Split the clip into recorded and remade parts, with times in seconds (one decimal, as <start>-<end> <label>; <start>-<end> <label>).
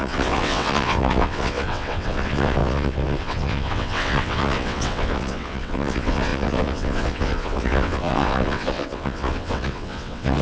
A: 0.0-10.4 remade